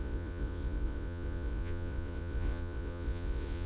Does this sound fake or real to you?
fake